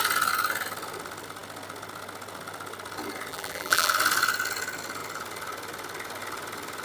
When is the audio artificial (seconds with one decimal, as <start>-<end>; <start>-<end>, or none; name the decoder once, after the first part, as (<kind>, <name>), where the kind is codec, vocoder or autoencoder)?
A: 3.3-3.9 (vocoder, BigVGAN v2)

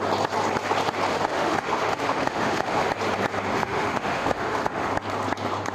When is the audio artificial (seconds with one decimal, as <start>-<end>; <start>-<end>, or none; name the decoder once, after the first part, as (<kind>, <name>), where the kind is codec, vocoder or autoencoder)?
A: 1.1-2.9 (autoencoder, DAC-VAE); 3.5-4.9

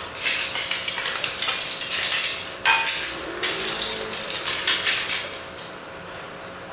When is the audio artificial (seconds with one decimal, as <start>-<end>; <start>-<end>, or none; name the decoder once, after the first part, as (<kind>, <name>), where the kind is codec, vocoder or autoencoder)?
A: none

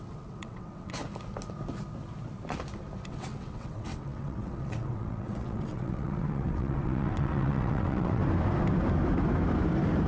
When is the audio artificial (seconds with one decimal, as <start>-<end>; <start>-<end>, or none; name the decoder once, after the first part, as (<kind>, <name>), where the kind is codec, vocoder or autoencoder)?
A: 0.0-1.0 (vocoder, WaveNeXt); 3.1-8.2

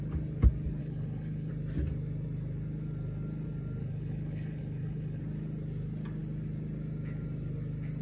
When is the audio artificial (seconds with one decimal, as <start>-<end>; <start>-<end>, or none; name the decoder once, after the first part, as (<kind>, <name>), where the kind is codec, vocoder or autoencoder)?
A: 0.8-1.5 (codec, HILCodec); 3.8-5.2

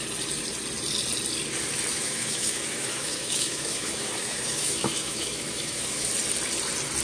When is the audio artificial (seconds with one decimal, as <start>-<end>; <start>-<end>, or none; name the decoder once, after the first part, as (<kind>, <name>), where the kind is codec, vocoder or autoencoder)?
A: 1.9-6.1 (autoencoder, DAC-VAE)